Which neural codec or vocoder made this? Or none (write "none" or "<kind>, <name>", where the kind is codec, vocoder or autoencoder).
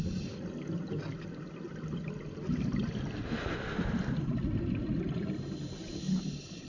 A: none